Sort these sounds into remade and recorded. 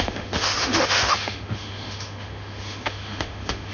remade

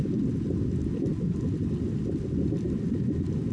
recorded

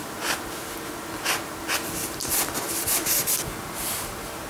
recorded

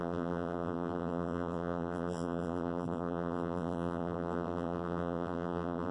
remade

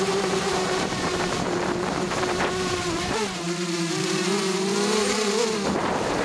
remade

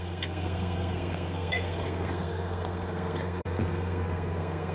remade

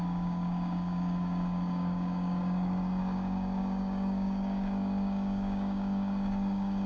remade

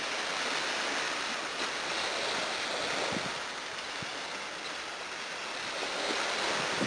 recorded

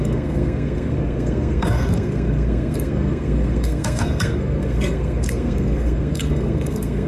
remade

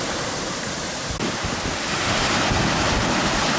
recorded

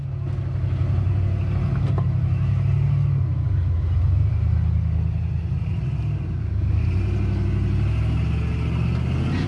recorded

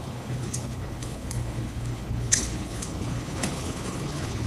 remade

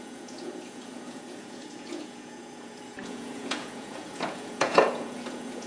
remade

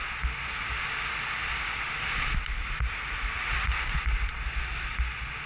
recorded